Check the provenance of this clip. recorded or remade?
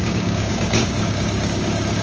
remade